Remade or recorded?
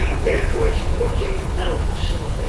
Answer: remade